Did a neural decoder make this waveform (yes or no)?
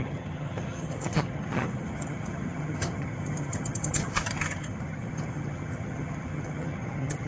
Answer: yes